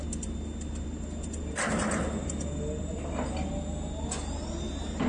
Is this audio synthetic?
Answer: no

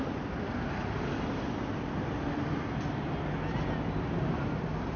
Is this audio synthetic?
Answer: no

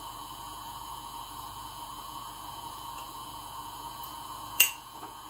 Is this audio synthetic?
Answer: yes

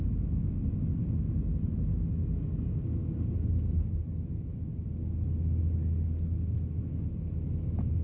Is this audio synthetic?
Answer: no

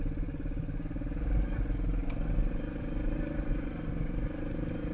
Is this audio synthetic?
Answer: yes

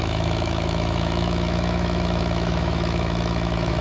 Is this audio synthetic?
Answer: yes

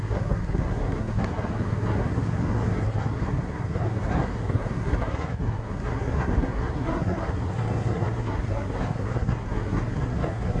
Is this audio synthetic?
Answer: yes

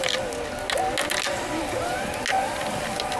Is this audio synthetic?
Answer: no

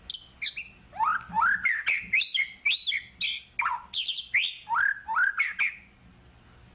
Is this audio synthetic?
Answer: no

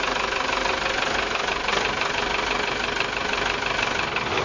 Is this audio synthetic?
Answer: no